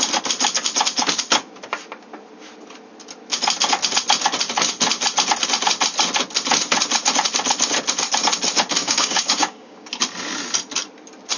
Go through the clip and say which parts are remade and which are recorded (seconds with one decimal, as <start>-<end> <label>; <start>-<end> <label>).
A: 0.0-8.8 recorded; 8.8-9.9 remade; 9.9-11.4 recorded